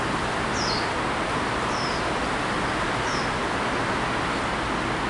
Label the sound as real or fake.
real